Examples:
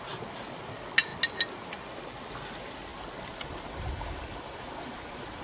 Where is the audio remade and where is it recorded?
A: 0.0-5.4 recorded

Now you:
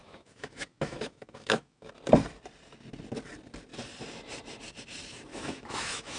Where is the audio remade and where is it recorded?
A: 0.0-1.9 remade; 1.9-5.3 recorded; 5.3-6.2 remade

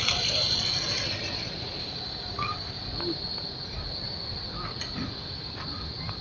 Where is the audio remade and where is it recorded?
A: 0.0-1.8 recorded; 1.8-2.8 remade; 2.8-6.2 recorded